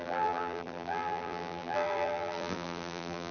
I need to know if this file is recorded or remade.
remade